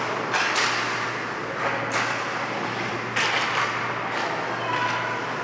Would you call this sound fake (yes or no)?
no